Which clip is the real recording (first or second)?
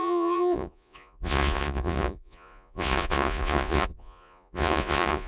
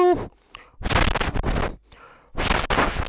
second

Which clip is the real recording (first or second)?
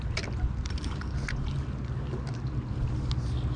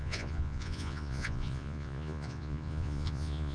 first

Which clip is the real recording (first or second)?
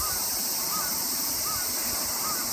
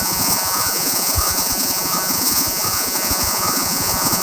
first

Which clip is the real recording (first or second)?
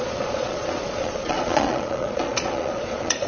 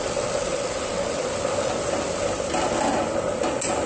second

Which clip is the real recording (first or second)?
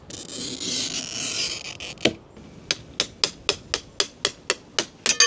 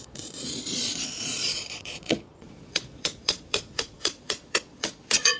first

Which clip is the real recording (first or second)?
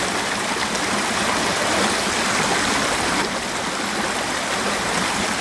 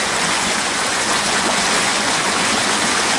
first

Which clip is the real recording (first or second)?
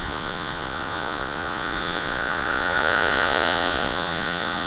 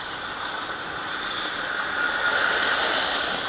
second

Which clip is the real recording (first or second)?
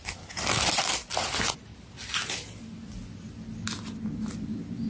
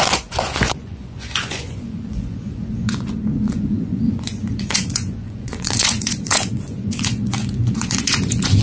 first